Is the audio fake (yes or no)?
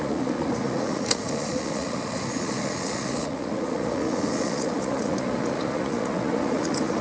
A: yes